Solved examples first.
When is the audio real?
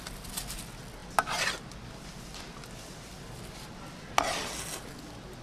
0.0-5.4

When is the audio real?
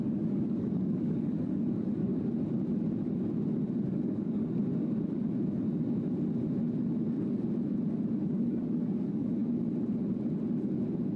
2.1-3.9; 4.6-8.4; 9.4-11.2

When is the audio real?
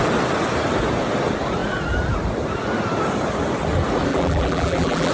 0.0-4.1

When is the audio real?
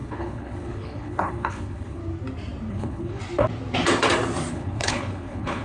2.0-2.7; 3.2-4.5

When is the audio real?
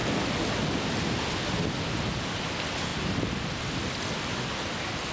0.0-5.1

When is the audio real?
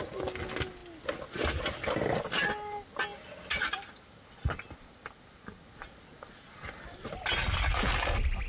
0.0-8.5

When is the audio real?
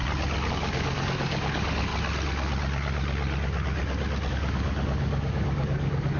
0.0-0.5; 1.9-4.3